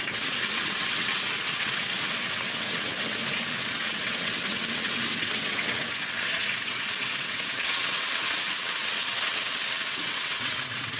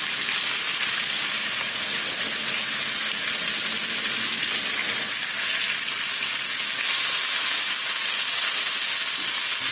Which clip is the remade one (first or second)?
first